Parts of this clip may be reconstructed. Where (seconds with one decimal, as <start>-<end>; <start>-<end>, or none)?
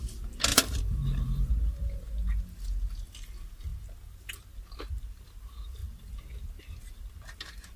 0.5-1.5